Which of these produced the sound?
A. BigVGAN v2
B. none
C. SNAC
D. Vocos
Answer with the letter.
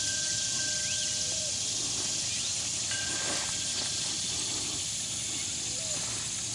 B